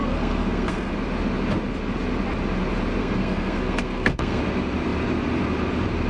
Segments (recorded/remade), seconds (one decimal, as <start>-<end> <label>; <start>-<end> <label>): 0.0-0.9 remade; 0.9-3.0 recorded; 3.0-4.4 remade; 4.4-6.1 recorded